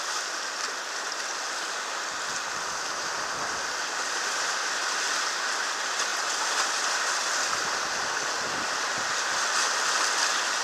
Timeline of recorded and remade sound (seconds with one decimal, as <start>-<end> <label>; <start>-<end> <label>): 0.0-10.6 recorded